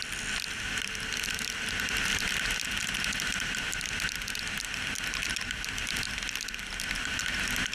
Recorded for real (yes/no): yes